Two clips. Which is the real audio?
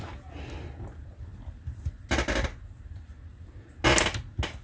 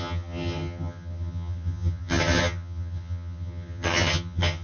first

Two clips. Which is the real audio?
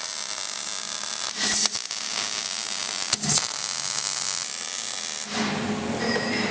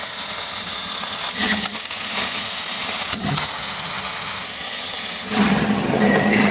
first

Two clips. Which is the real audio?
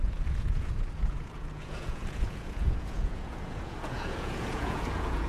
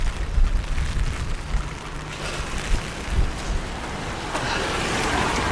second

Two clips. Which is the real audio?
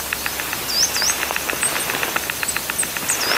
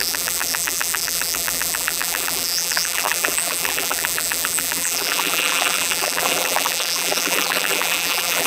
first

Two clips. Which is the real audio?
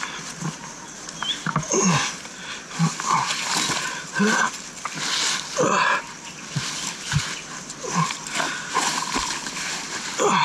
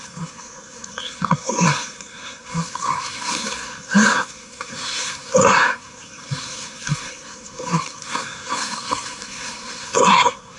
first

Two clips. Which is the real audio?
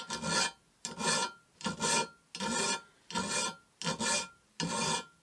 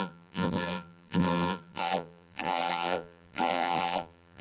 first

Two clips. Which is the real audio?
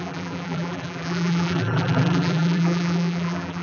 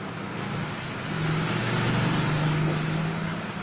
second